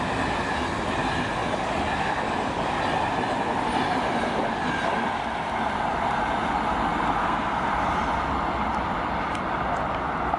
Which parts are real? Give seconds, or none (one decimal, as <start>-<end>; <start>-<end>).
0.0-7.2; 7.7-10.4